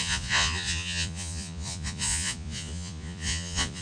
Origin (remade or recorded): remade